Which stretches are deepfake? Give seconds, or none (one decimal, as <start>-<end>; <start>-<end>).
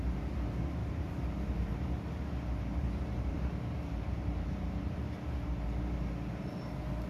0.8-2.1; 3.3-7.1